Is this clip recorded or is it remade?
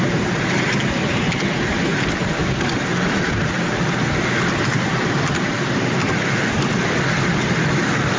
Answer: recorded